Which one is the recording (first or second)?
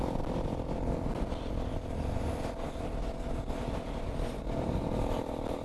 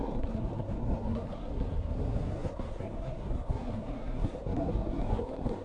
first